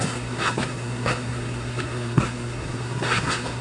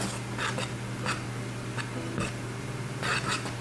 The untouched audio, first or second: second